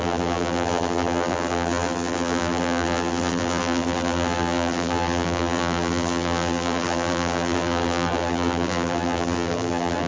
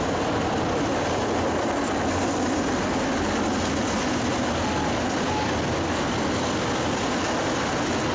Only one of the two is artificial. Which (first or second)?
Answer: first